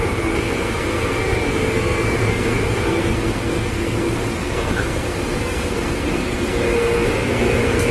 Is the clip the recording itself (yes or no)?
no